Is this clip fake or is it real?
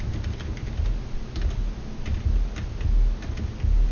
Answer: real